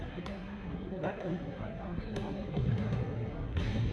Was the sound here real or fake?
fake